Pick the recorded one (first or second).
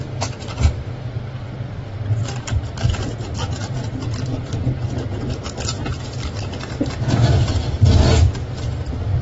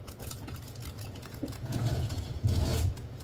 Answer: first